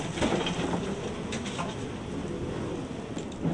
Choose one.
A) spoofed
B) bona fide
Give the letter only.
B